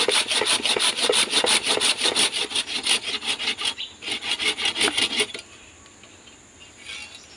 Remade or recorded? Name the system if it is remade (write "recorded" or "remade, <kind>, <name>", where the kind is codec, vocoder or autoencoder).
recorded